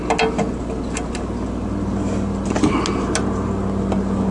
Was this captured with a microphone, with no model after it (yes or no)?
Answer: yes